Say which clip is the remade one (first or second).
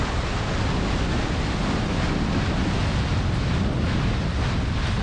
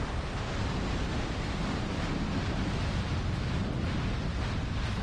second